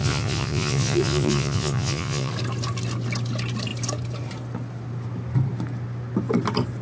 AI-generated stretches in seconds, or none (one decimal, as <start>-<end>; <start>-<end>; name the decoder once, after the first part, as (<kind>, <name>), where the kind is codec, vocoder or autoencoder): 0.0-2.3 (vocoder, Vocos)